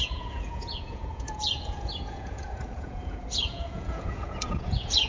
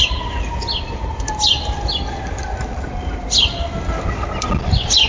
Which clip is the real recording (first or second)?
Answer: second